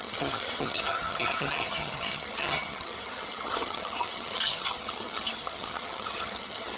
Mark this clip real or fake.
fake